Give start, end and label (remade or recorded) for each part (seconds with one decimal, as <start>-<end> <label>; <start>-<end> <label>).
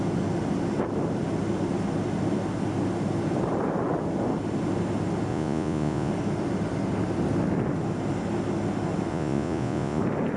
0.0-5.3 recorded; 5.3-6.1 remade; 6.1-9.1 recorded; 9.1-10.0 remade; 10.0-10.4 recorded